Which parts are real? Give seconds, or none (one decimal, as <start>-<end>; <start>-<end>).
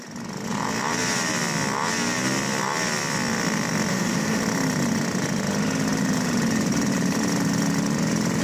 0.0-3.9; 4.4-8.4